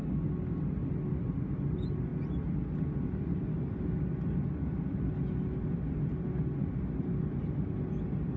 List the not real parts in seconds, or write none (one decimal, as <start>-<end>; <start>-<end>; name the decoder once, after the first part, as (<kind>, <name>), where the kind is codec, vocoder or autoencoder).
none